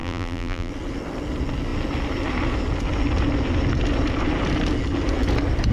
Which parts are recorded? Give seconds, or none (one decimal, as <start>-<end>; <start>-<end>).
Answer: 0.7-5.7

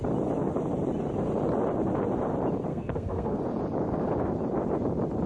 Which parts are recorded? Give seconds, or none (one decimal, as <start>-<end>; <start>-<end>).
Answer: 0.0-2.7; 3.4-5.3

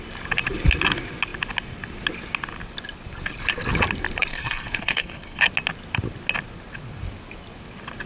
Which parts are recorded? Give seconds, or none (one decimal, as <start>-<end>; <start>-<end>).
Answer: 0.0-4.3; 5.4-8.1

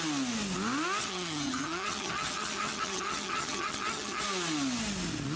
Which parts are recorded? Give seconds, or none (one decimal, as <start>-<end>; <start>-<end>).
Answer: 0.0-1.0; 4.2-5.4